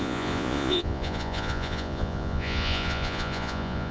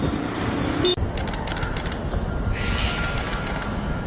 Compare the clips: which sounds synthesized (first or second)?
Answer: first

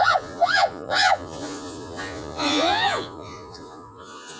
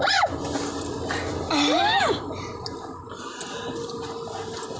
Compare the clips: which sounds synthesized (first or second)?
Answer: first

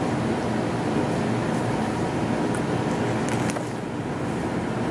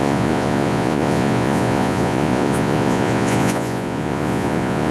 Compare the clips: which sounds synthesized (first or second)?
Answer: second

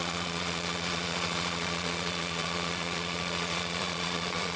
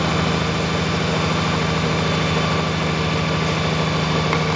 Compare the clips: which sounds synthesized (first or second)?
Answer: first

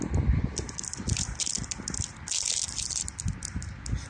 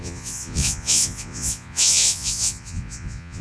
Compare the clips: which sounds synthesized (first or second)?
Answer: second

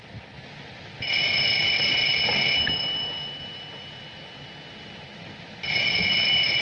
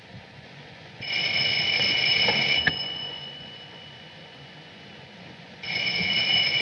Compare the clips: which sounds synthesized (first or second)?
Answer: second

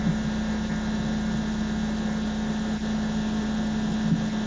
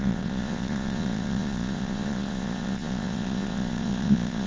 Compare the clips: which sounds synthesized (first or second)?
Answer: second